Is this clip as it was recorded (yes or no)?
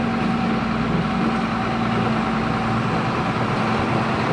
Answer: yes